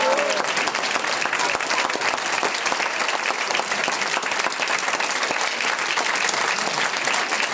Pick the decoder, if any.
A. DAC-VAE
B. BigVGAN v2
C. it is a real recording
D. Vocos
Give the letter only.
C